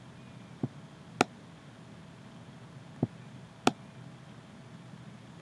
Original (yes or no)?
yes